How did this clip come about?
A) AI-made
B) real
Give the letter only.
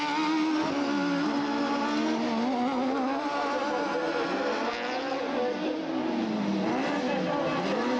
B